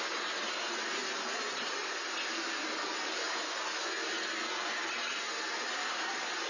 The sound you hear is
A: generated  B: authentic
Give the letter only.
B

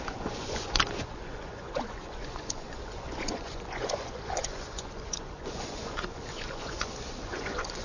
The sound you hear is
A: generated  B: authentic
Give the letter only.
A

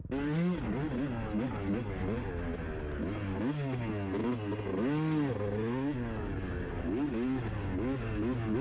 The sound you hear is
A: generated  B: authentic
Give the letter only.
B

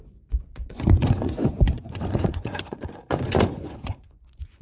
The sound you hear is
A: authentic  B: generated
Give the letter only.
B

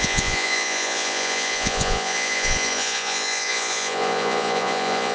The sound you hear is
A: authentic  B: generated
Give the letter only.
B